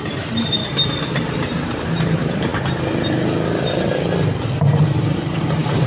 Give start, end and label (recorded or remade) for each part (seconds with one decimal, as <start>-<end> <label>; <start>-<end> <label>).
0.0-2.5 remade; 2.5-4.6 recorded; 4.6-5.9 remade